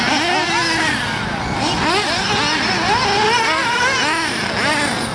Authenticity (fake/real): real